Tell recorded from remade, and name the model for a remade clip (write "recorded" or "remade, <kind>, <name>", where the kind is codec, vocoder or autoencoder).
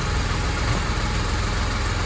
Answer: recorded